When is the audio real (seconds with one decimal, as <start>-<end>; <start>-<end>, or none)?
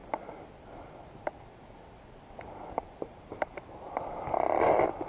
0.0-5.1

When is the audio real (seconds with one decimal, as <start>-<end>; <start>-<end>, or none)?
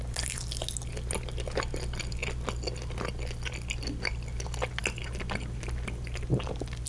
0.0-6.9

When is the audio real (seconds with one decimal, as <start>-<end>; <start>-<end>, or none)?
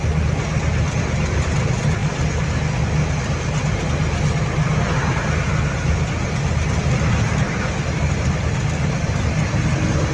0.0-10.1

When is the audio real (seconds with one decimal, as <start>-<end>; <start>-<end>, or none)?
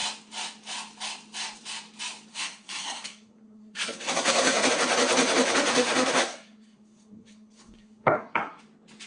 0.0-2.3; 4.7-5.7; 8.6-9.1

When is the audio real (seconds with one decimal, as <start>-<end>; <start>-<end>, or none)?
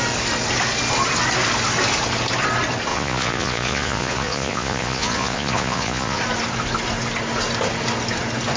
0.0-2.9; 6.2-8.6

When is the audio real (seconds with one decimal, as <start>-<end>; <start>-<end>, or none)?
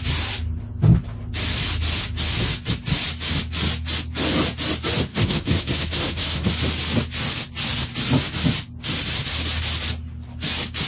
0.0-5.1; 6.5-10.9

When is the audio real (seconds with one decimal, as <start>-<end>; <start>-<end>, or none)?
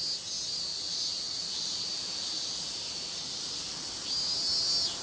0.0-0.7; 3.7-5.0